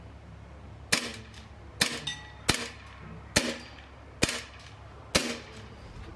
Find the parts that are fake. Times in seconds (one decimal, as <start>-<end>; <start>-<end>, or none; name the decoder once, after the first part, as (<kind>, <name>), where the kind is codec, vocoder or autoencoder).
5.2-6.2 (vocoder, BigVGAN v2)